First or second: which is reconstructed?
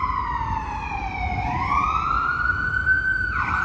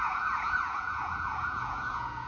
second